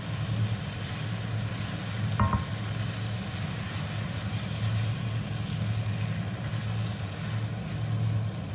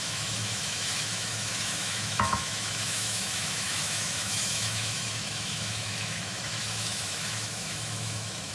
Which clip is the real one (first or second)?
first